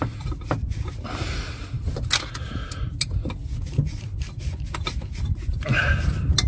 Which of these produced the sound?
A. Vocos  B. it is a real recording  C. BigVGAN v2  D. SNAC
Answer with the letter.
B